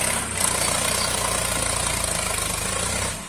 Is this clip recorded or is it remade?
recorded